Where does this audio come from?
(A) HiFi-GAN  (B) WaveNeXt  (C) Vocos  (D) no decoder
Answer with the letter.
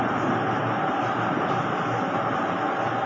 D